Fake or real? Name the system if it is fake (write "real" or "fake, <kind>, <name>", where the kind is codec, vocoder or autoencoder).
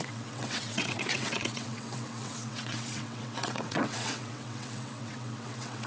fake, vocoder, WaveNeXt